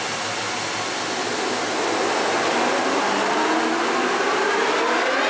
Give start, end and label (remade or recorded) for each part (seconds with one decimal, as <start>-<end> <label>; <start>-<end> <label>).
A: 0.0-5.3 recorded